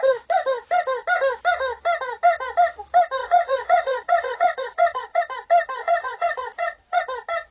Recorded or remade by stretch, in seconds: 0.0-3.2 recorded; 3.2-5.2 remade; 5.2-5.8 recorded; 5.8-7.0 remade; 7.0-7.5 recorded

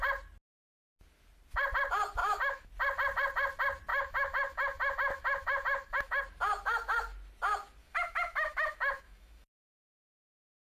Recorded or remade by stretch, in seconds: 0.0-2.2 recorded; 2.2-2.7 remade; 2.7-3.9 recorded; 3.9-6.2 remade; 6.2-7.8 recorded; 7.8-10.1 remade; 10.1-10.6 recorded

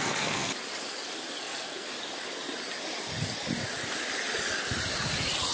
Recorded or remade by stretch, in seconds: 0.0-0.5 remade; 0.5-1.4 recorded; 1.4-1.9 remade; 1.9-5.5 recorded

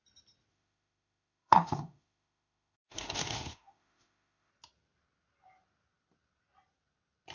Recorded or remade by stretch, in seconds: 0.0-0.5 recorded; 0.5-4.5 remade; 4.5-7.3 recorded